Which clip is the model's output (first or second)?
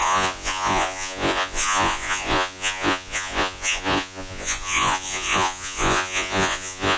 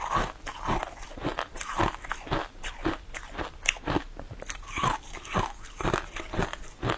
first